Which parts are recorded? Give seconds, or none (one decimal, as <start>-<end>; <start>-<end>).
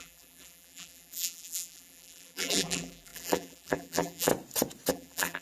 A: 4.3-4.9